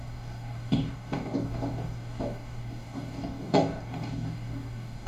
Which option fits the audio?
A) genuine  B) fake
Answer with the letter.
B